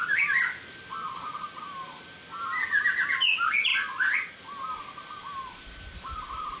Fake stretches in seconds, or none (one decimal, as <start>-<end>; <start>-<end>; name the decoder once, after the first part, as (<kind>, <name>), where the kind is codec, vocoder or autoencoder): none